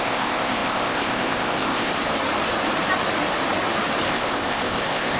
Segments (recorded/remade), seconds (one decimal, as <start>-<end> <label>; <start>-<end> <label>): 0.0-1.9 remade; 1.9-4.1 recorded; 4.1-5.2 remade